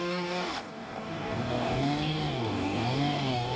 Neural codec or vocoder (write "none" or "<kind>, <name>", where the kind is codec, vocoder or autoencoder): codec, DAC